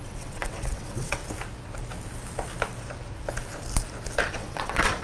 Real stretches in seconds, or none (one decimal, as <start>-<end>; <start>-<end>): 1.2-4.2